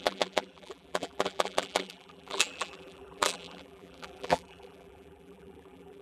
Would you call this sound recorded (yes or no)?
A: no